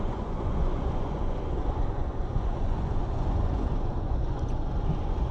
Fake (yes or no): yes